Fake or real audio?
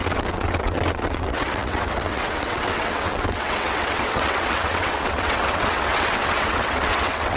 fake